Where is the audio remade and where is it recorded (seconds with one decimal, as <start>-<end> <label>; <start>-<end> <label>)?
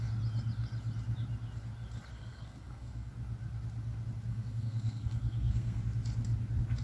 0.0-2.1 recorded; 2.1-3.1 remade; 3.1-4.3 recorded; 4.3-5.8 remade; 5.8-6.8 recorded